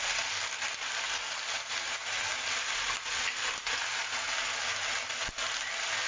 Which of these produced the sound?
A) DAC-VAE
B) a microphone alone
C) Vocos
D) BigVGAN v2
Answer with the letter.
B